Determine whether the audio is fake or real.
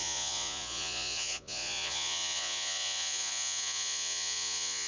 fake